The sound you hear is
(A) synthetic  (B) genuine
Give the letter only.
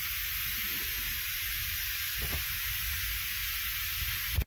B